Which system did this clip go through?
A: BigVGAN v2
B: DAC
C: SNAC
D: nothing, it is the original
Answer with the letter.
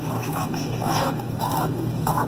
B